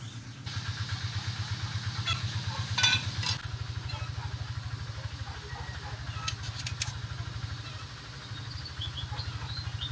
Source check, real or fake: real